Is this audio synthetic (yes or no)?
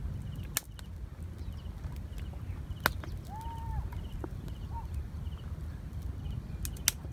no